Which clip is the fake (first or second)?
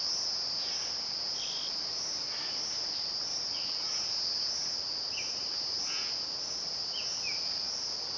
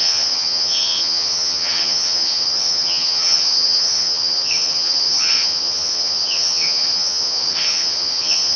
second